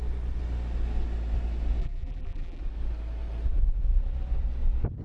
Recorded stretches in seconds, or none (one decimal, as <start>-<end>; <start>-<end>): 0.0-1.8; 2.6-5.0